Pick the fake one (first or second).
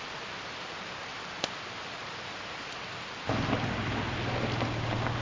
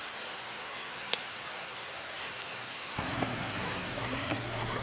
second